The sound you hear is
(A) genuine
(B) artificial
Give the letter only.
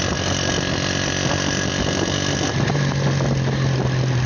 A